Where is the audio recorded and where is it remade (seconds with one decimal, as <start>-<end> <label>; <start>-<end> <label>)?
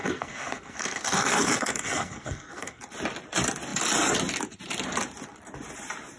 0.0-2.8 remade; 2.8-6.2 recorded